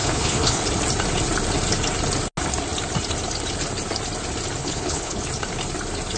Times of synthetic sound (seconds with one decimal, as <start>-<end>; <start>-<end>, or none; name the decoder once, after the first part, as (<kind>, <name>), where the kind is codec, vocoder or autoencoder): 0.0-0.6 (codec, HILCodec); 4.6-5.2